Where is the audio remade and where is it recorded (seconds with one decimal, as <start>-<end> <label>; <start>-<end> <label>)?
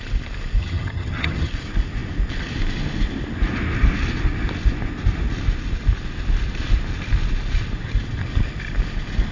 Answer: 0.0-0.6 recorded; 0.6-1.5 remade; 1.5-9.3 recorded